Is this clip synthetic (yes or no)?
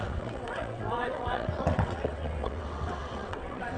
yes